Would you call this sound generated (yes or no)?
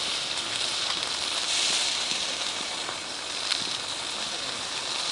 yes